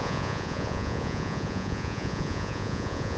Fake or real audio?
fake